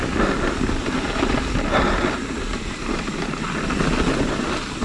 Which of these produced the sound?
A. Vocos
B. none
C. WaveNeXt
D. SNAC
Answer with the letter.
B